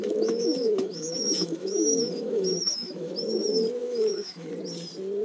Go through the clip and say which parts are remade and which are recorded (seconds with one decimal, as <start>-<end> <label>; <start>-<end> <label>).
0.0-3.1 remade; 3.1-3.8 recorded; 3.8-4.5 remade; 4.5-5.2 recorded